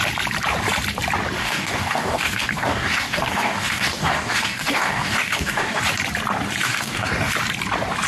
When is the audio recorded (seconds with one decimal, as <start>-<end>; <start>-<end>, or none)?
0.0-1.4; 5.8-6.6; 7.3-8.1

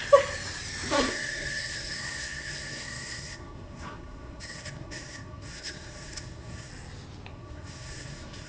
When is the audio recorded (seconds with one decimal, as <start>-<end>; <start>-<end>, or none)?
0.0-1.0; 6.7-7.3

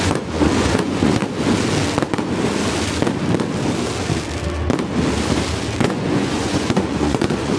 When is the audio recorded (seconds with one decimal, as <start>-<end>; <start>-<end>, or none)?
1.2-5.8

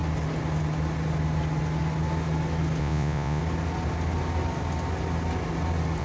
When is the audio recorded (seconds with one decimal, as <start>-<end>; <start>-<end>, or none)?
0.0-2.8; 3.4-6.0